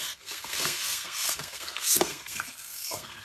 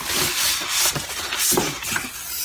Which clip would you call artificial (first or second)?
first